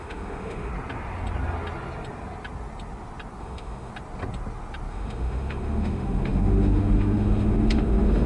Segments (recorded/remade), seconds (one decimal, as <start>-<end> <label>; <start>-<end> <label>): 0.0-0.7 remade; 0.7-3.4 recorded; 3.4-3.9 remade; 3.9-4.9 recorded; 4.9-8.3 remade